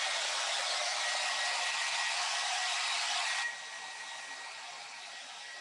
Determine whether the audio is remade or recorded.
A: recorded